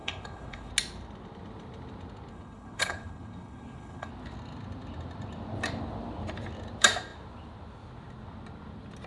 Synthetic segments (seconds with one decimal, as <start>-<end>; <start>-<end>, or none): 0.0-0.7; 2.3-4.1